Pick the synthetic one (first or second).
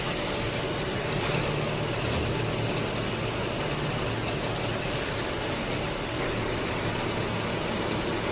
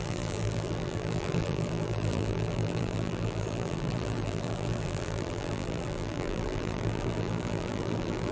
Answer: second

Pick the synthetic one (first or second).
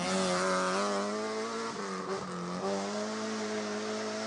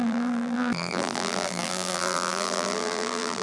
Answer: second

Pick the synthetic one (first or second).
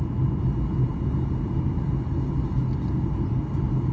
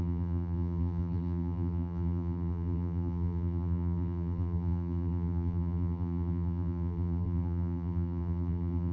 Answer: second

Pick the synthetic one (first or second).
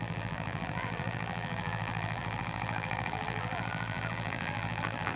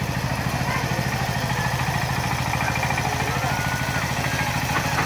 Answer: first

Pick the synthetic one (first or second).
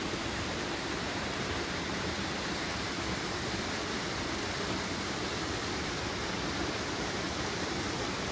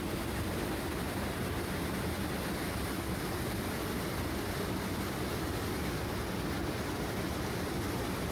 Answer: first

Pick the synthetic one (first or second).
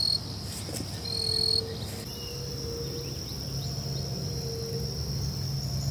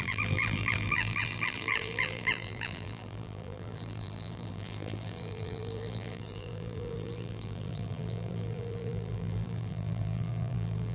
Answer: second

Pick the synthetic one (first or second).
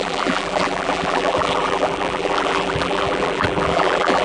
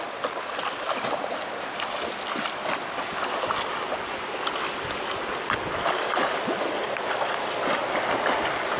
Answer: first